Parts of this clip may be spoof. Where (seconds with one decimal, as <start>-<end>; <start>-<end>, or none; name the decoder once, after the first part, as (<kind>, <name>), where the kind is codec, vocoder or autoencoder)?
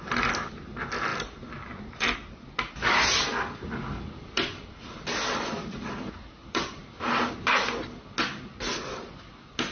none